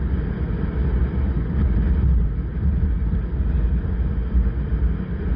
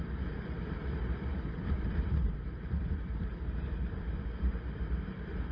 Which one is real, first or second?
first